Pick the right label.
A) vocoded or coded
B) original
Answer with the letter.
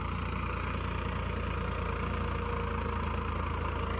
B